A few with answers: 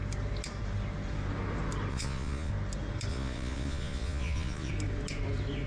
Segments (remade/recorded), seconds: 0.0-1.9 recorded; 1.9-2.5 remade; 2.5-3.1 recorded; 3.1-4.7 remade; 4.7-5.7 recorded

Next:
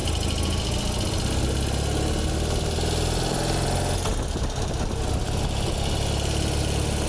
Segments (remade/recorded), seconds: 0.0-7.1 recorded

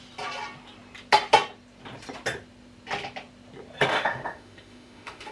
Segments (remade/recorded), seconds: 0.0-3.9 recorded; 3.9-5.3 remade

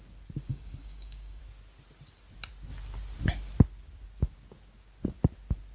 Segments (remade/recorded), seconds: 0.0-0.5 recorded; 0.5-1.4 remade; 1.4-5.7 recorded

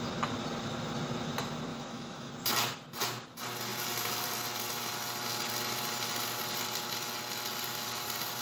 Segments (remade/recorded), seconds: 0.0-1.7 recorded; 1.7-2.3 remade; 2.3-8.4 recorded

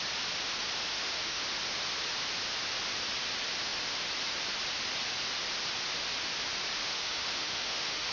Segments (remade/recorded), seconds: 0.0-0.9 recorded; 0.9-1.4 remade; 1.4-6.8 recorded; 6.8-8.1 remade

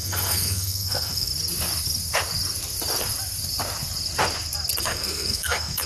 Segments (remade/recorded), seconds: 0.0-1.3 remade; 1.3-4.8 recorded; 4.8-5.9 remade